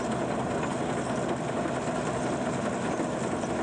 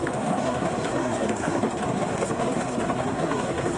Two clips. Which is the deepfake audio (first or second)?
second